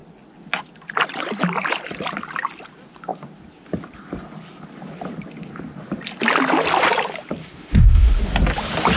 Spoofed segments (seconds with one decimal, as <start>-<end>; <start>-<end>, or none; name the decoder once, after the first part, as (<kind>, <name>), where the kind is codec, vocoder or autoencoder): 7.4-8.3 (autoencoder, DAC-VAE)